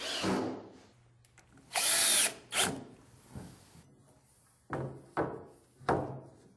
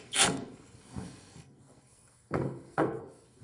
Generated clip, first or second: second